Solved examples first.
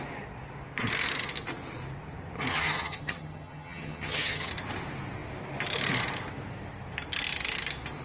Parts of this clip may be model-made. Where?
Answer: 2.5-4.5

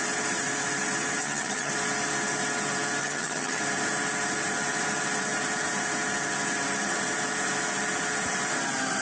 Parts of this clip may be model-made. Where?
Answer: 1.2-1.7; 3.0-3.6

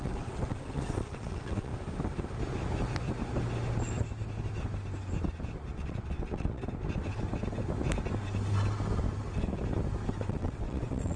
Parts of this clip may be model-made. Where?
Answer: 0.0-1.7; 5.7-6.6; 10.2-11.2

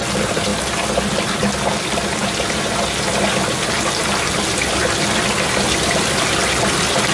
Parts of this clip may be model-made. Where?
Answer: none

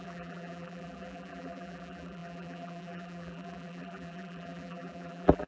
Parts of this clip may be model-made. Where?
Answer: 0.0-5.5

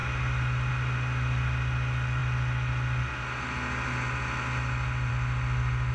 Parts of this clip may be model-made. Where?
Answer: none